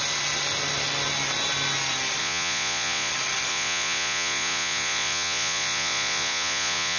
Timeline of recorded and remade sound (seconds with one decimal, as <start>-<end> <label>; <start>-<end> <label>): 0.0-2.2 recorded; 2.2-3.1 remade; 3.1-3.5 recorded; 3.5-7.0 remade